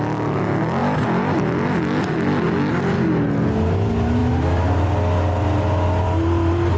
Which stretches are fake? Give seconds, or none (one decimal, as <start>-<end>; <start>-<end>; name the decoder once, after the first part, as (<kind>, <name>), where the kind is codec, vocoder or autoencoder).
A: none